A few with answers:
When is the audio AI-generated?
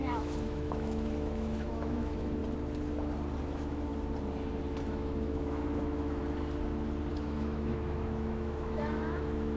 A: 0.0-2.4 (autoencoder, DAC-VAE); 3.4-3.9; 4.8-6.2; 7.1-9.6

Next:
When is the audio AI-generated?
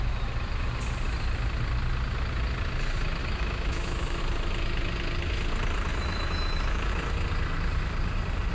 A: 3.2-4.2 (autoencoder, DAC-VAE); 5.9-6.9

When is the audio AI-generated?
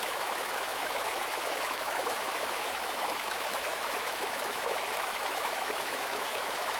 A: 0.0-6.8 (autoencoder, DAC-VAE)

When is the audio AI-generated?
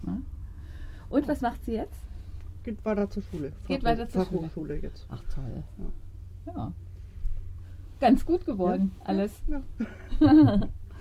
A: 0.4-1.2 (autoencoder, DAC-VAE)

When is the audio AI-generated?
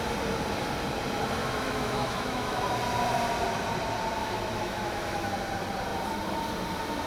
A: 1.4-2.6 (autoencoder, DAC-VAE); 4.2-5.3